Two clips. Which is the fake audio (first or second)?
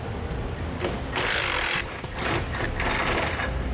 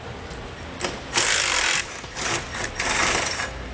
first